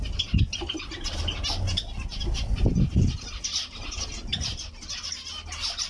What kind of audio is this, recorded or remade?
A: recorded